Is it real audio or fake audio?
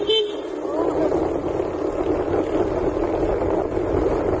real